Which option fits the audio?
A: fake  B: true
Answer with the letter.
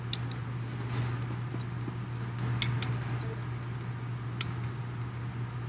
B